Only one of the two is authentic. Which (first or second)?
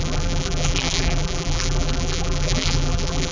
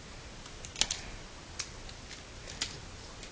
second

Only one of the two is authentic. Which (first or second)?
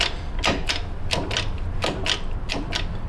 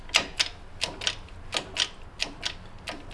second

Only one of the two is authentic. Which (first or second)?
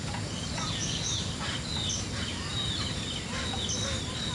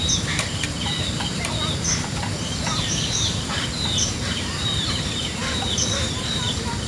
first